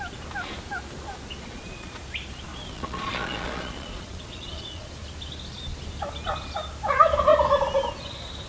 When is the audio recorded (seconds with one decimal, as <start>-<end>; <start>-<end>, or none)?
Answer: 0.0-1.5; 2.0-2.5; 4.9-8.5